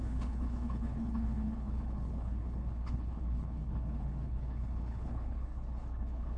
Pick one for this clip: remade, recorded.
remade